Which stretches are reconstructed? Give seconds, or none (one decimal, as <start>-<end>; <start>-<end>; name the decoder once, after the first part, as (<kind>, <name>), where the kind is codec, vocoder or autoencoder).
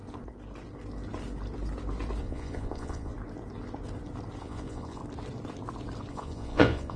2.2-3.1 (vocoder, Vocos); 4.4-5.0; 6.1-7.0